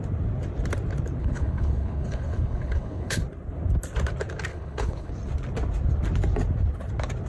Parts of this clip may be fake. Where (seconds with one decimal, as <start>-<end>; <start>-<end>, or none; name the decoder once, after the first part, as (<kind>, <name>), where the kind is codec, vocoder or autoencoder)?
1.2-3.2 (codec, HILCodec); 4.5-5.1